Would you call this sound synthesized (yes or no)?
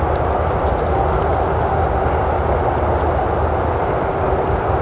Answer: no